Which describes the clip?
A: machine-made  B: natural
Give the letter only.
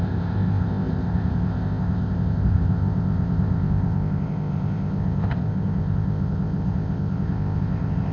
A